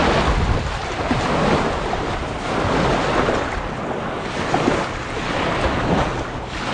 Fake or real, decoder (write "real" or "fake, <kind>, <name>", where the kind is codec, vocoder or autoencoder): real